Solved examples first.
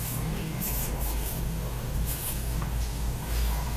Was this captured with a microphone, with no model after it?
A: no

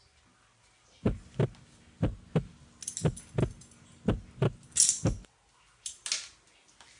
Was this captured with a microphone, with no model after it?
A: yes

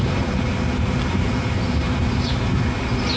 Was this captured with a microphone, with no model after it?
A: yes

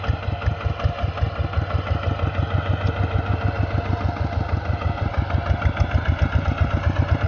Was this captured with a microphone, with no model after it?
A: yes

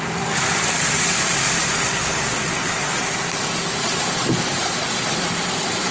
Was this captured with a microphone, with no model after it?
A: yes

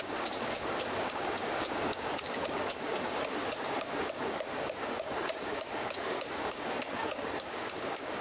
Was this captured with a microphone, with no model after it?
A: no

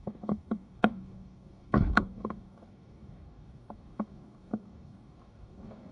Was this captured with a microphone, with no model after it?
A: no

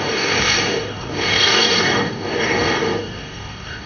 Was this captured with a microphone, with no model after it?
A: no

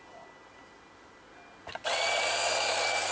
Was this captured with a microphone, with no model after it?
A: yes